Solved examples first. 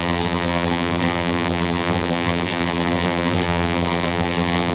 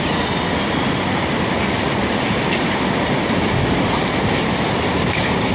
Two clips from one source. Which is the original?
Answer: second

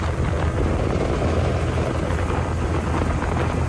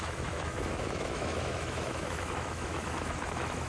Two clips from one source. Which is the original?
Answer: first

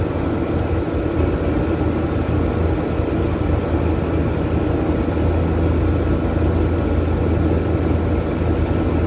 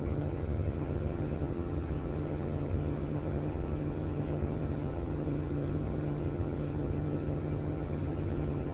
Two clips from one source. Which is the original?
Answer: first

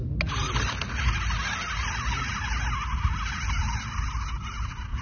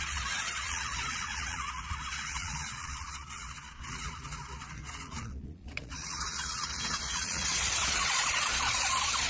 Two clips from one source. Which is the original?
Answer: first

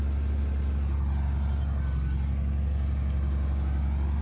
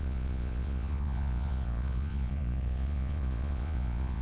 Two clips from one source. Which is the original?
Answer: first